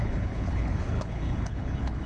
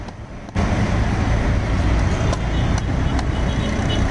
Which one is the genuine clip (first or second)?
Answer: second